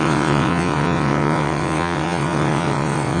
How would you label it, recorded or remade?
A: remade